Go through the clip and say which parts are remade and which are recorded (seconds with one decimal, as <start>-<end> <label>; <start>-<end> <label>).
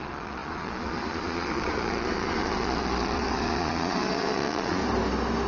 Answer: 0.0-4.8 remade; 4.8-5.5 recorded